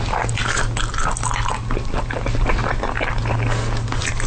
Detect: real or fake real